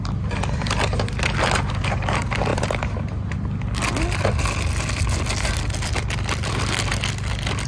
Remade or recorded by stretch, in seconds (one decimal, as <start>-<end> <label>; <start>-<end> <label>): 0.0-7.7 recorded